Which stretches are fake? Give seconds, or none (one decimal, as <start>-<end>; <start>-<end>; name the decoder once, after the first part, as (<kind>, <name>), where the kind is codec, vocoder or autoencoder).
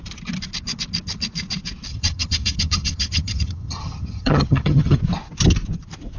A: 1.9-5.0 (vocoder, HiFi-GAN)